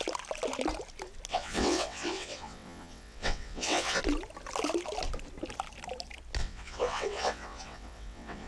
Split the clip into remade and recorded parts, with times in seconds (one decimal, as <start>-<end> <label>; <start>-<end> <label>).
0.0-1.3 recorded; 1.3-4.0 remade; 4.0-6.4 recorded; 6.4-8.5 remade